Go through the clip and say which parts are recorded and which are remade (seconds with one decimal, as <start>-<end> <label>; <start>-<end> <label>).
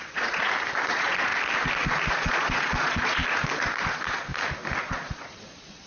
0.0-0.4 remade; 0.4-0.9 recorded; 0.9-1.3 remade; 1.3-2.1 recorded; 2.1-3.2 remade; 3.2-3.8 recorded; 3.8-4.3 remade; 4.3-4.8 recorded; 4.8-5.9 remade